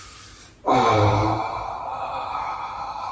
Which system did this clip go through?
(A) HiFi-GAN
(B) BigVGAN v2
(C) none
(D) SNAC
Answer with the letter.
B